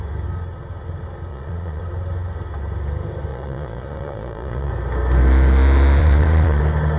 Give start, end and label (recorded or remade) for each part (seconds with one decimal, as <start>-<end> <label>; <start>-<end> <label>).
0.0-1.3 recorded; 1.3-1.8 remade; 1.8-3.3 recorded; 3.3-4.7 remade; 4.7-6.0 recorded; 6.0-6.6 remade; 6.6-7.0 recorded